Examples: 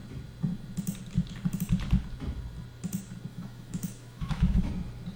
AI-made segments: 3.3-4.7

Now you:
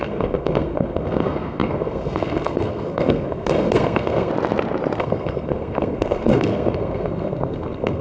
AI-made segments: 0.0-4.3; 5.0-8.0

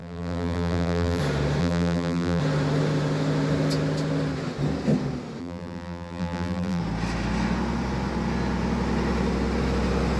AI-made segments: 0.0-1.2; 1.6-2.4; 5.4-6.8

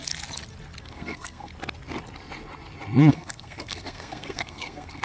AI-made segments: 0.8-1.5; 3.1-5.0